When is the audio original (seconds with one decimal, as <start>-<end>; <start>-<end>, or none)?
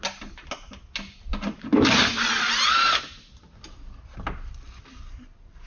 0.0-5.7